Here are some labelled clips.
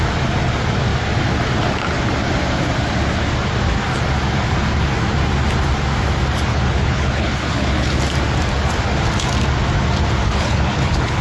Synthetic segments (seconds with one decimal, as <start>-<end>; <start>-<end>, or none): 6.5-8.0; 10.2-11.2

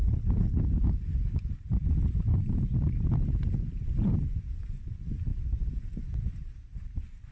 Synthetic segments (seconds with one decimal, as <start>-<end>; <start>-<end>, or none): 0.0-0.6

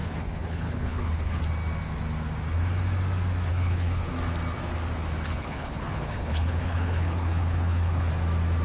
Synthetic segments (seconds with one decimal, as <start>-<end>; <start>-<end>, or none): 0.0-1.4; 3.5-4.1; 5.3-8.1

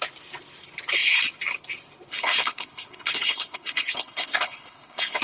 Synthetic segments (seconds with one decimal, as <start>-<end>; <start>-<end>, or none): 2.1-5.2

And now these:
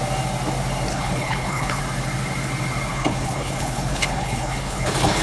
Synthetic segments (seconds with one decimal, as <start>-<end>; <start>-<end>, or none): 0.9-1.8; 2.9-5.2